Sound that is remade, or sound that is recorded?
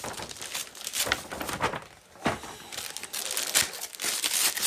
recorded